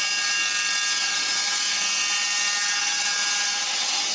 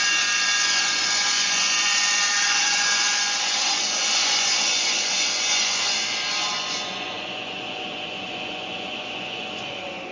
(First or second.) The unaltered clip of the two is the first